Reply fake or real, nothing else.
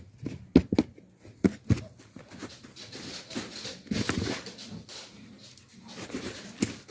real